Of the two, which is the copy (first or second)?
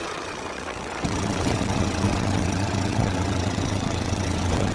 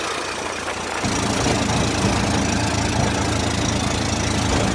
first